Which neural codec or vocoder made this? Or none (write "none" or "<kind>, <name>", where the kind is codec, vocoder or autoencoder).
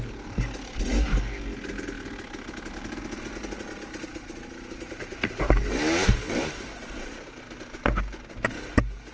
none